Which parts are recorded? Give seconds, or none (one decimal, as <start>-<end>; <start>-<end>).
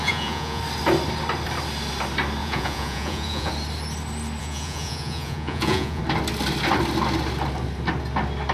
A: 0.6-2.4; 3.5-4.4; 6.0-8.5